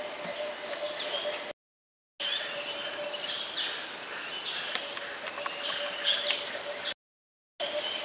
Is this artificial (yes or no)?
no